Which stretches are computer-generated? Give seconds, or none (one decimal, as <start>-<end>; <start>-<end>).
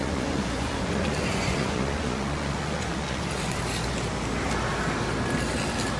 0.0-3.6